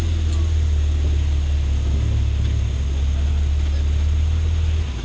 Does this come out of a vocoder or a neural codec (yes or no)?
no